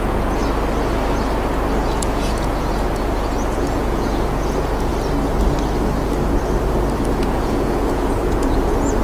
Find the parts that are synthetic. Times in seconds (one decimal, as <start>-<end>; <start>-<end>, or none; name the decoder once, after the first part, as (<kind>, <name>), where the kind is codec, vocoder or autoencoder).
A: 0.0-0.4 (vocoder, Vocos); 1.8-4.9; 7.1-9.0